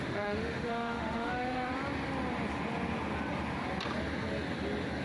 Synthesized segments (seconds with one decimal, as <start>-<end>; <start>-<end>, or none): 0.0-1.7